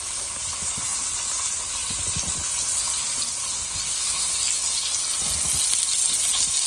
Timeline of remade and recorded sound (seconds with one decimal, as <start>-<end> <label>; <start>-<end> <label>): 0.0-3.5 recorded; 3.5-4.3 remade; 4.3-6.7 recorded